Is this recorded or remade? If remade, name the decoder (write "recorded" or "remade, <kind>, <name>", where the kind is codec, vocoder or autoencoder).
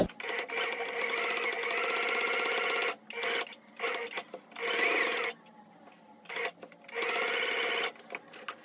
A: recorded